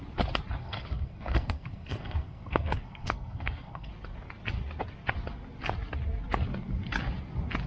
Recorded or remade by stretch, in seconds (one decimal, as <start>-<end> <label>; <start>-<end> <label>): 0.0-0.6 recorded; 0.6-3.9 remade; 3.9-7.7 recorded